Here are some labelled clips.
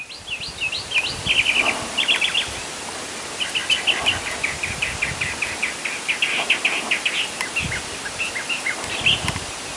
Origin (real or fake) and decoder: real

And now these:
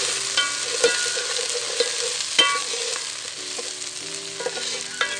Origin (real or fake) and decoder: real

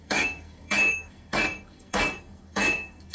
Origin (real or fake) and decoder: fake, codec, SNAC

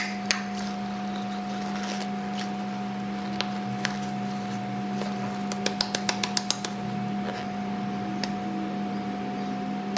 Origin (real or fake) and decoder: real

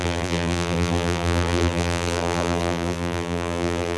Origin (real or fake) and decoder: fake, vocoder, BigVGAN v2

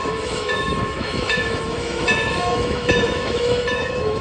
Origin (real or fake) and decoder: fake, autoencoder, DAC-VAE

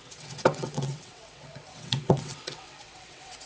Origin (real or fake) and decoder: fake, vocoder, WaveNeXt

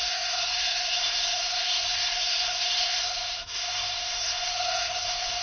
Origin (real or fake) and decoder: fake, codec, SNAC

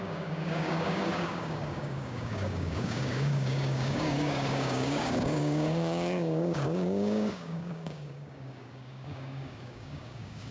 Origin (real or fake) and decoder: fake, codec, DAC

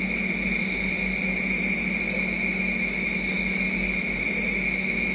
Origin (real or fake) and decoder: real